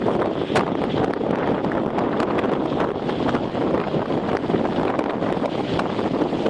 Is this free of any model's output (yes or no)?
yes